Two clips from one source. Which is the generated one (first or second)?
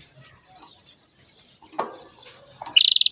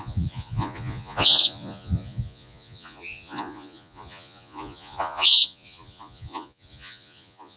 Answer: second